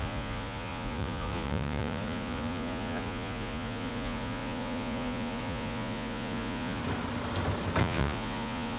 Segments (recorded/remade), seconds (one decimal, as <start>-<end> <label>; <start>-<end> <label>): 0.0-6.8 remade; 6.8-7.8 recorded; 7.8-8.8 remade